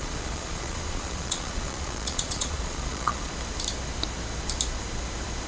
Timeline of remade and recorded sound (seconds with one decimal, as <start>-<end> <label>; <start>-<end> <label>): 0.0-3.3 remade; 3.3-5.5 recorded